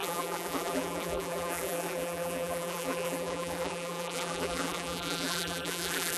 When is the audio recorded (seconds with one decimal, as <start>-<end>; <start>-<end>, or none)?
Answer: none